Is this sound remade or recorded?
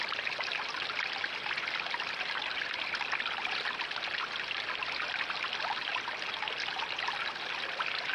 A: recorded